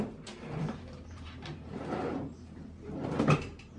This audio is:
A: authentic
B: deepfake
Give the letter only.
B